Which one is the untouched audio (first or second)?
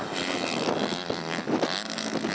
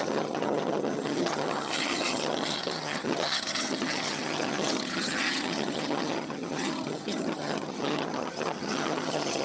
first